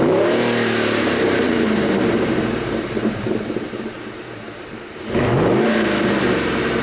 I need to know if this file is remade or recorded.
remade